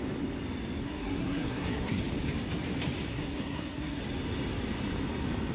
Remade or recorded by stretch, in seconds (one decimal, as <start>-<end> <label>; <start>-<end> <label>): 0.0-0.8 recorded; 0.8-2.0 remade; 2.0-3.1 recorded; 3.1-4.0 remade; 4.0-5.5 recorded